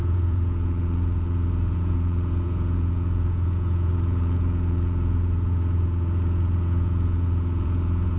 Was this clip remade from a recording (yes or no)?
yes